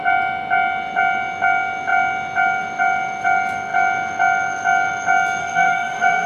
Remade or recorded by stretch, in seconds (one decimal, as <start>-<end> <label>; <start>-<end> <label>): 0.0-5.4 recorded; 5.4-6.3 remade